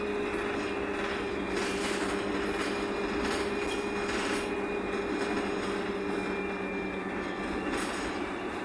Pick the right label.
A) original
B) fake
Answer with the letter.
A